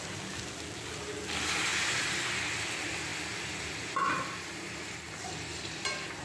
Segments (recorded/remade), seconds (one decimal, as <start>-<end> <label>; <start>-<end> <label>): 0.0-6.2 recorded